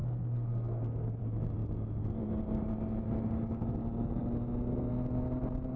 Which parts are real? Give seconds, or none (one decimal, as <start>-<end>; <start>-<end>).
1.2-5.8